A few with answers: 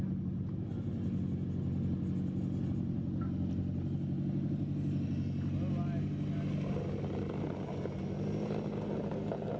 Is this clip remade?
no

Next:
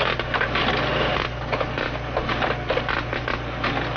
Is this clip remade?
no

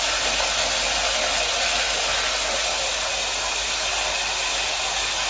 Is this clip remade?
no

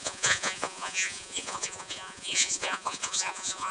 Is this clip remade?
yes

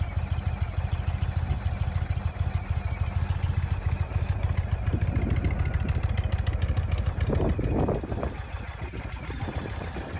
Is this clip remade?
no